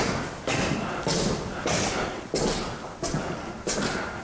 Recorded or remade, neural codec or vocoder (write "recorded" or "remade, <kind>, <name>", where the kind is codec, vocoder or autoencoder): recorded